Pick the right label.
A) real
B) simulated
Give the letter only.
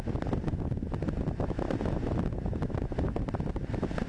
A